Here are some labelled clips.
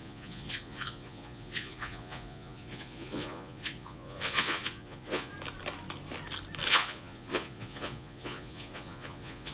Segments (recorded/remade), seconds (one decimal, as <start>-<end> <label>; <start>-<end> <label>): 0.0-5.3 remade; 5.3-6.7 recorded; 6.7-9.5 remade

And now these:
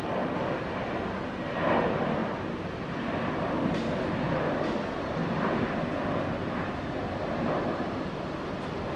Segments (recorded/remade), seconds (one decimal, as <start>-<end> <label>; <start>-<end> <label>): 0.0-9.0 recorded

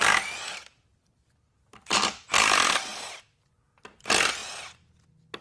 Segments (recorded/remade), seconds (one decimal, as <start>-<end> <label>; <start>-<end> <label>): 0.0-0.7 recorded; 0.7-2.2 remade; 2.2-2.9 recorded; 2.9-3.5 remade; 3.5-5.4 recorded

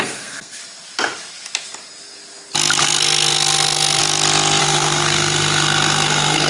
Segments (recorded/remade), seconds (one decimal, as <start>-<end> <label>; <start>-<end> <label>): 0.0-0.6 remade; 0.6-2.8 recorded; 2.8-4.0 remade; 4.0-4.6 recorded; 4.6-6.5 remade

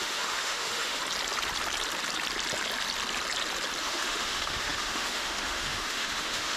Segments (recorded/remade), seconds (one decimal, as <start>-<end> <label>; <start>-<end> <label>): 0.0-1.0 remade; 1.0-3.8 recorded; 3.8-6.6 remade